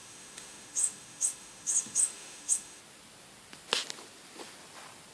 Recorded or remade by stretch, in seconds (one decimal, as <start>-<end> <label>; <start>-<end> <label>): 0.0-2.8 remade; 2.8-5.1 recorded